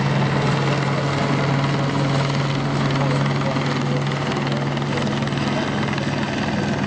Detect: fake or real real